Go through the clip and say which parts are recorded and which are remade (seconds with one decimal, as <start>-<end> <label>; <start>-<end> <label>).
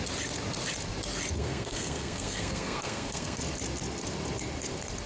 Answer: 0.0-1.4 recorded; 1.4-3.4 remade; 3.4-5.1 recorded